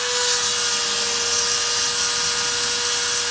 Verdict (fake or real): real